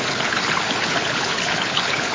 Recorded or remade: remade